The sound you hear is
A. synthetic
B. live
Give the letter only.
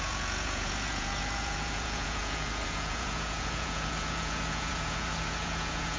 A